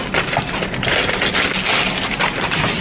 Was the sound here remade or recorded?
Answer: recorded